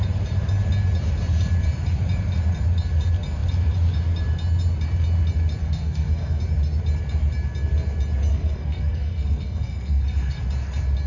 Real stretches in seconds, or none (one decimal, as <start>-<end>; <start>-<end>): 0.0-5.6; 6.4-8.3; 10.4-11.1